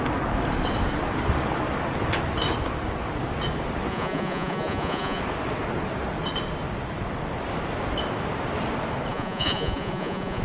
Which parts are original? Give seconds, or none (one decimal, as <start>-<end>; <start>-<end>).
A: 0.0-3.9; 5.2-9.1